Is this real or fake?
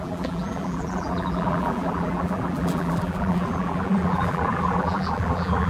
fake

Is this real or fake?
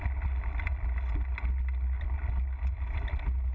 real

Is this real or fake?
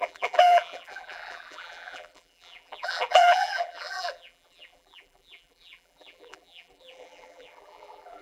fake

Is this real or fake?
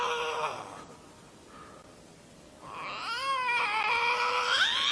real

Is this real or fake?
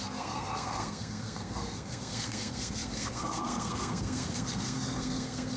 fake